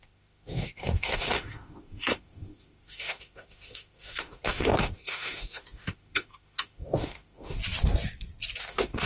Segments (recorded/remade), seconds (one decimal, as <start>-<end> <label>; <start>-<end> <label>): 0.0-7.6 remade; 7.6-8.6 recorded; 8.6-9.1 remade